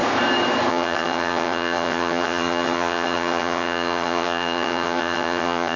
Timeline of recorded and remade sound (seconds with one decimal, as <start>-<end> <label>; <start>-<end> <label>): 0.0-0.7 recorded; 0.7-5.8 remade